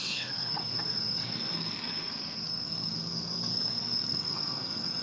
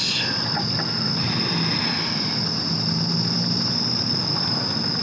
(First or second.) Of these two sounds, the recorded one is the second